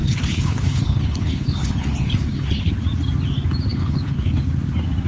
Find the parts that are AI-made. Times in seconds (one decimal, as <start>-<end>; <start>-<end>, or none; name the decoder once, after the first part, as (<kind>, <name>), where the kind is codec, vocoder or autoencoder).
0.0-2.7 (codec, HILCodec); 3.7-4.4